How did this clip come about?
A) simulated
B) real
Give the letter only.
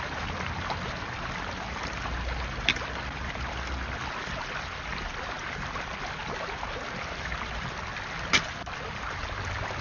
B